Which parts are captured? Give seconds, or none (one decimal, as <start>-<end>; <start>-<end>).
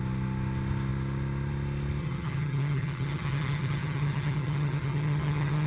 0.0-2.0